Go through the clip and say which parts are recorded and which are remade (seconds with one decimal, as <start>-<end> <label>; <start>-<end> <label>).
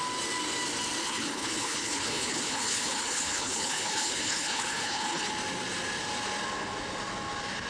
0.0-1.0 recorded; 1.0-5.3 remade; 5.3-7.7 recorded